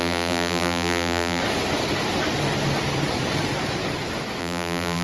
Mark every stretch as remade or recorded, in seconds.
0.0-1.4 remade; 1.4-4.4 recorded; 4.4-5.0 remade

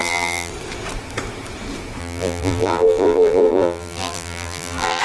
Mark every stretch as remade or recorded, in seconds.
0.0-0.5 remade; 0.5-2.0 recorded; 2.0-5.0 remade

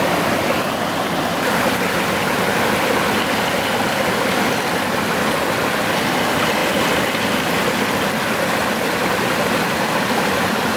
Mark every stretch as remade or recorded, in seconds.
0.0-10.8 recorded

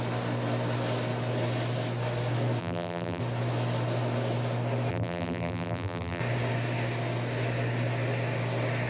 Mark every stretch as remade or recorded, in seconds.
0.0-2.6 recorded; 2.6-3.2 remade; 3.2-4.9 recorded; 4.9-6.2 remade; 6.2-8.9 recorded

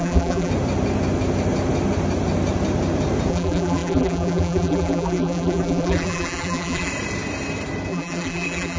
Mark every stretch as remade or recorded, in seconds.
0.0-0.5 remade; 0.5-3.3 recorded; 3.3-6.9 remade; 6.9-7.9 recorded; 7.9-8.8 remade

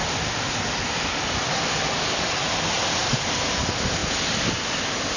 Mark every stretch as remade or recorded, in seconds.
0.0-2.4 remade; 2.4-3.0 recorded; 3.0-3.6 remade; 3.6-4.0 recorded; 4.0-5.2 remade

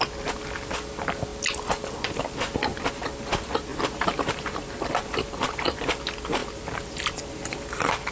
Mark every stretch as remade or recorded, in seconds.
0.0-3.7 recorded; 3.7-5.8 remade; 5.8-6.4 recorded; 6.4-8.1 remade

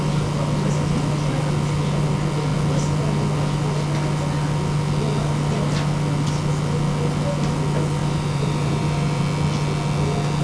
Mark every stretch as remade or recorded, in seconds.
0.0-8.0 recorded; 8.0-9.2 remade; 9.2-10.4 recorded